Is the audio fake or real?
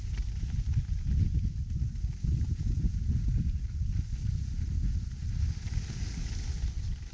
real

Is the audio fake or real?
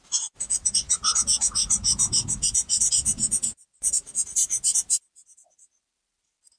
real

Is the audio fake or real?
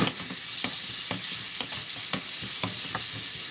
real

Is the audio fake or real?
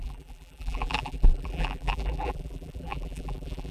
fake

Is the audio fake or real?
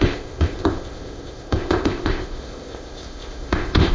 fake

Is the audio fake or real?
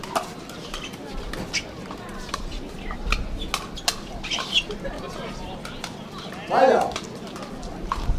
real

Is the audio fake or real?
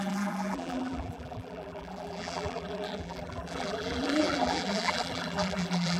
fake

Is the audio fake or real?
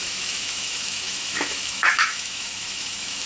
fake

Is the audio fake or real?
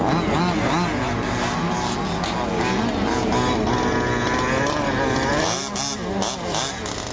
real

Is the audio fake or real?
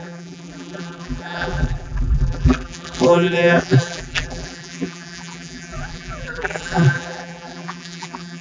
fake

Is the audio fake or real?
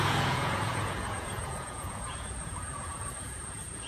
fake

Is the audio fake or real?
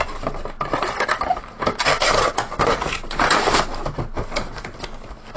real